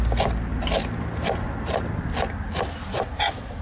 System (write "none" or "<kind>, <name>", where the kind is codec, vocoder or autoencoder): none